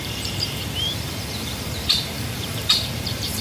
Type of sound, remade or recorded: remade